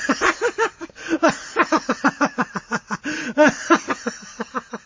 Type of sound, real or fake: real